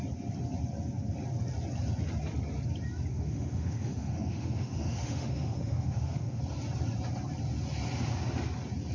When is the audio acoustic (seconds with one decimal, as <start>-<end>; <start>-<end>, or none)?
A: 0.0-3.1; 6.4-8.9